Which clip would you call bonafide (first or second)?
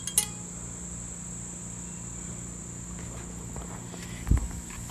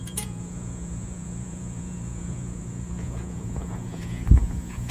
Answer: first